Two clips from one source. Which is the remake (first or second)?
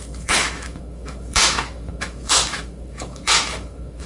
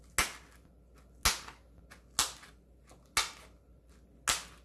first